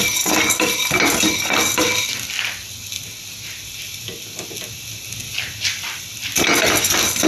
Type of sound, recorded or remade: recorded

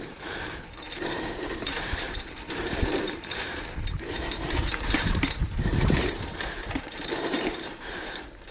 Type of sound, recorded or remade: remade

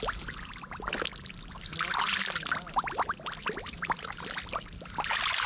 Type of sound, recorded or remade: recorded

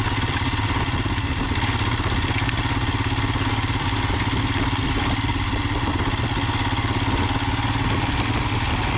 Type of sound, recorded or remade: recorded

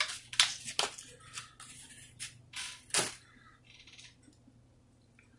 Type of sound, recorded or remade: recorded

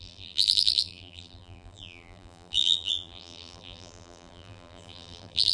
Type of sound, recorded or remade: remade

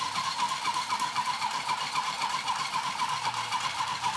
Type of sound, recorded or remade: remade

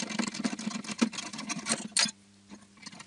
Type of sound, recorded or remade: recorded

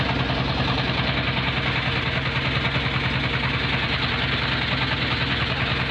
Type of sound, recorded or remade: recorded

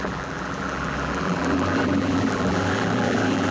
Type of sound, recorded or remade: remade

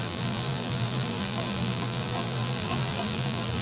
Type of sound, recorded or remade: remade